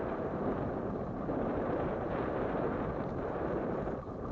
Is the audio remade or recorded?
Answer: remade